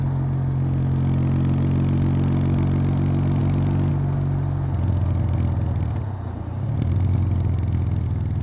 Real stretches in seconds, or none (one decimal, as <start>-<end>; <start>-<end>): 0.0-8.4

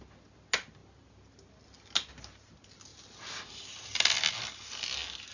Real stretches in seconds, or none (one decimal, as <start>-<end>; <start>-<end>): 0.0-5.3

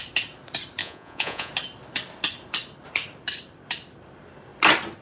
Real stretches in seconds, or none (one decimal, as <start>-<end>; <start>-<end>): 0.0-0.8; 1.5-5.0

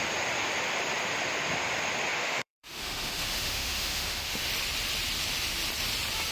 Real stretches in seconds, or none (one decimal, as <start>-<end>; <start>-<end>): 0.0-2.2; 4.5-6.3

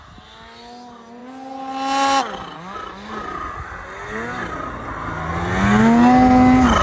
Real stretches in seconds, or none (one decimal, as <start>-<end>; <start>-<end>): 0.0-6.8

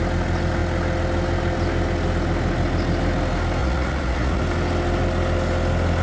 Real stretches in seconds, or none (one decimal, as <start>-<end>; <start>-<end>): 0.0-3.6; 4.4-6.0

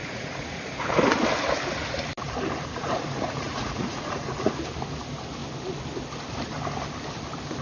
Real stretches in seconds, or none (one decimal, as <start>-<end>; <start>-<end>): 0.9-2.8; 4.5-7.6